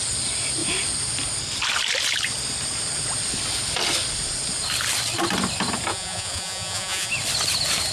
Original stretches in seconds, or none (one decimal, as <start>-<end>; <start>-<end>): 0.0-5.9; 7.1-7.9